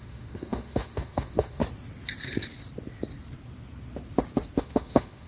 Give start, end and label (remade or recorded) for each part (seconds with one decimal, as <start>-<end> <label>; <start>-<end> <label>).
0.0-1.6 remade; 1.6-4.6 recorded; 4.6-5.3 remade